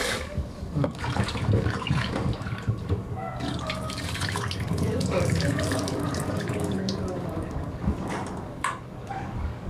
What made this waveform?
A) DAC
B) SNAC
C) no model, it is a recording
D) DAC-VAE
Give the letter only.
A